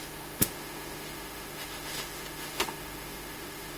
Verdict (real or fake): fake